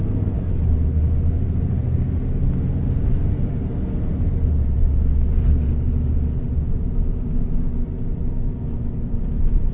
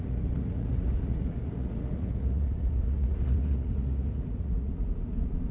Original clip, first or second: first